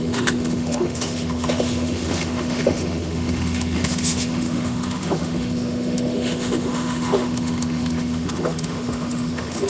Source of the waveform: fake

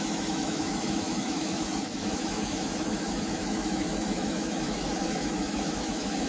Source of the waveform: fake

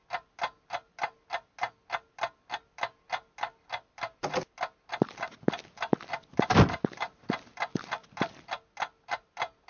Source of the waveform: real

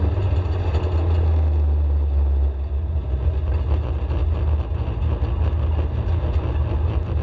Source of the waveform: real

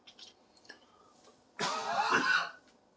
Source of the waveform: real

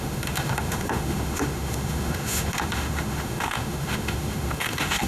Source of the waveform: fake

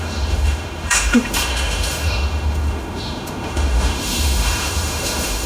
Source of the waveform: fake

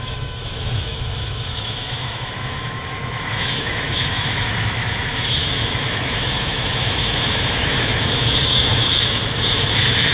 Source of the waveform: fake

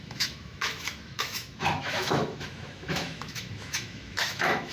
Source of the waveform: fake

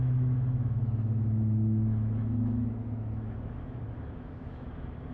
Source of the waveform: fake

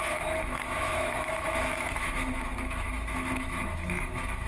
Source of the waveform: fake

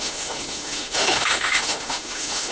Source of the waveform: fake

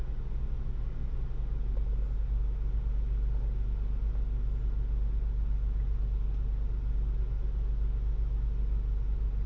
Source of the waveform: real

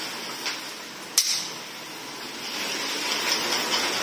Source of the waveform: real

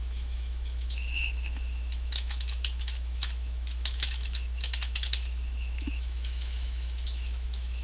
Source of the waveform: fake